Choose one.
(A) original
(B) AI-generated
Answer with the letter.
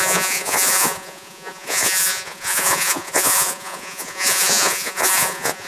B